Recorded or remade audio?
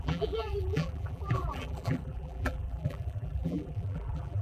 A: remade